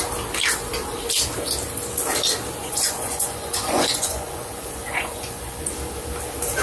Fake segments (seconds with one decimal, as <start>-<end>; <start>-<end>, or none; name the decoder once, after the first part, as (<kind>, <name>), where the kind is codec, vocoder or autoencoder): 2.6-5.7 (vocoder, Vocos)